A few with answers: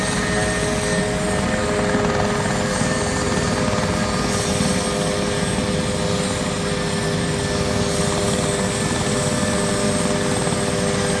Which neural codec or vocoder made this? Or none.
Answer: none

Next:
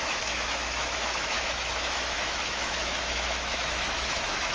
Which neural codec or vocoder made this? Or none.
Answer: autoencoder, DAC-VAE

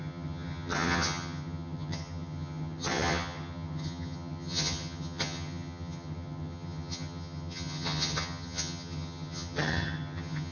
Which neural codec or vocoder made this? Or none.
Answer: vocoder, HiFi-GAN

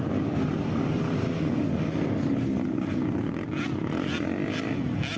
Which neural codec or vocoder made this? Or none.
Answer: none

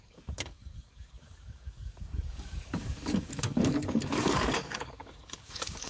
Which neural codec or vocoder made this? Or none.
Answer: codec, DAC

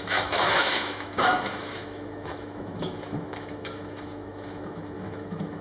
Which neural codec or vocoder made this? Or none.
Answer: autoencoder, DAC-VAE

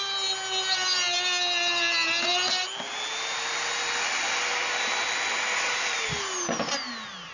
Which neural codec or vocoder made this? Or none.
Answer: none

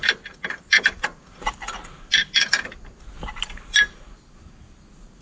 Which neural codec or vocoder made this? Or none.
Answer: none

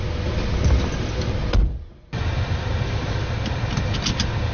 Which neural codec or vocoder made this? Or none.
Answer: none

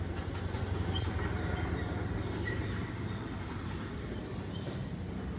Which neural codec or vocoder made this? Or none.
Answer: none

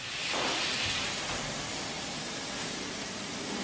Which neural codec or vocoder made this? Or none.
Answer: none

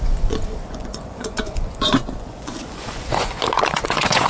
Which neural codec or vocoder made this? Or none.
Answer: vocoder, Vocos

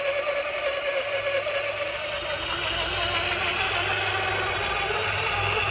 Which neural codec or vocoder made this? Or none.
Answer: none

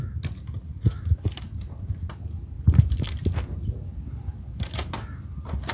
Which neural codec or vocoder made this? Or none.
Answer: none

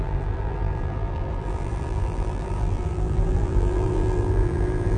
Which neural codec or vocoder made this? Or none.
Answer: vocoder, BigVGAN v2